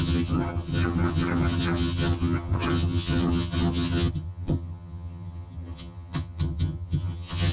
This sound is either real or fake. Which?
fake